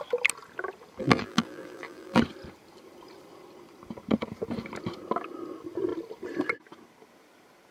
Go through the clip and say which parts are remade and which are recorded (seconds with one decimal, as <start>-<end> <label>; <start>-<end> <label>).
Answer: 0.0-1.0 recorded; 1.0-2.2 remade; 2.2-7.7 recorded